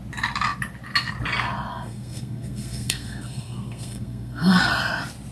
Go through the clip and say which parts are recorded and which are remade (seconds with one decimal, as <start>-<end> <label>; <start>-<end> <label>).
0.0-1.7 recorded; 1.7-4.7 remade; 4.7-5.3 recorded